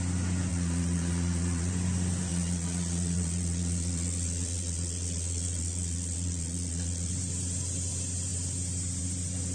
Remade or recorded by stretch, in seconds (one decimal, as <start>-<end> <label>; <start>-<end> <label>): 0.0-0.5 recorded; 0.5-1.7 remade; 1.7-2.3 recorded; 2.3-7.1 remade; 7.1-9.5 recorded